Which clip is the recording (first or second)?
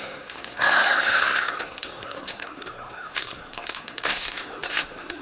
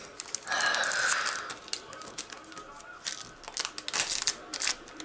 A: second